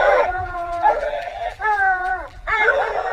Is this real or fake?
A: fake